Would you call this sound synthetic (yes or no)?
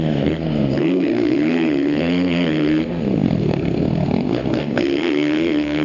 yes